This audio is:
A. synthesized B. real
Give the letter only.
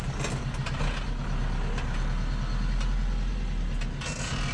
B